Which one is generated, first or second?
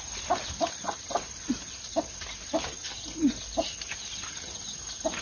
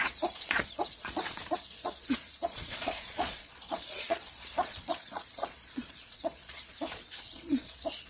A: second